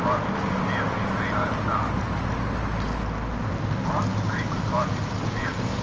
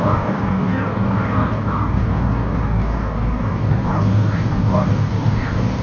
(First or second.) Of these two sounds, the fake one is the second